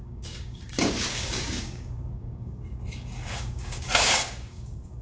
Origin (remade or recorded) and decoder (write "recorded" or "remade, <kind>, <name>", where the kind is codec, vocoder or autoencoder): remade, codec, DAC